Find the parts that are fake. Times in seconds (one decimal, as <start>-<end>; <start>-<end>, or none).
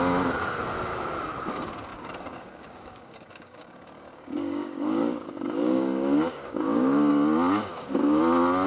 1.9-7.1; 7.7-8.2